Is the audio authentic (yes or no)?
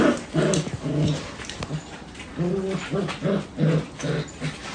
yes